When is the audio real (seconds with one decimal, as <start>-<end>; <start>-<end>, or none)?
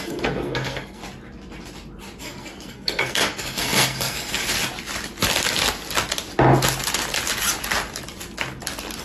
1.0-2.2; 4.4-9.0